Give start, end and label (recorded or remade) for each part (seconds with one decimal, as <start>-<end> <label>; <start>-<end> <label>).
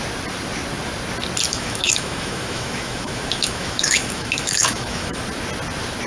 0.0-1.5 recorded; 1.5-5.2 remade; 5.2-6.1 recorded